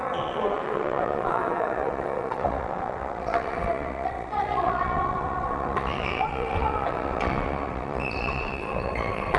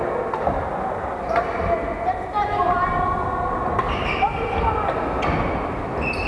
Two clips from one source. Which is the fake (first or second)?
first